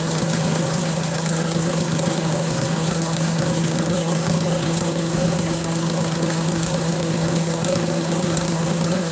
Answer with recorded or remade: remade